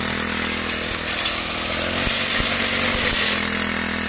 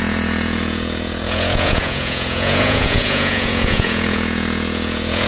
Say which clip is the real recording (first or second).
first